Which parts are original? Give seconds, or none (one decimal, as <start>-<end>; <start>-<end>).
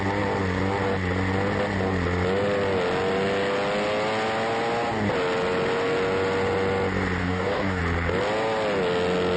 0.0-7.2; 7.8-9.4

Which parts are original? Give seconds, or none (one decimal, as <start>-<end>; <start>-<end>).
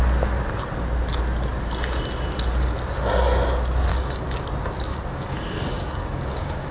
0.0-3.9; 4.4-4.9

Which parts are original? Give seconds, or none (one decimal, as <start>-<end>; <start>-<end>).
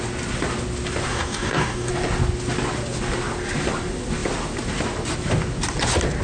0.0-1.1; 1.9-6.2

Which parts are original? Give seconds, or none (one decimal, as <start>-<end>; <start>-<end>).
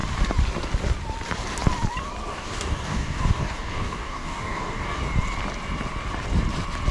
0.0-2.3; 5.0-6.9